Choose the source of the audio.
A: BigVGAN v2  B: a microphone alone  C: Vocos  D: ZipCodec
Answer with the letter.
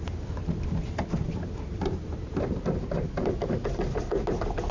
B